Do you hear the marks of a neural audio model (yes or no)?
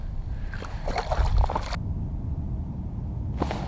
no